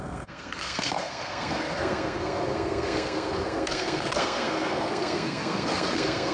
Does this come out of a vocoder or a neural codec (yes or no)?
yes